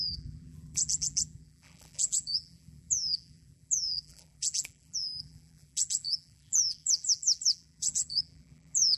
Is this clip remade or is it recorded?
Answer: remade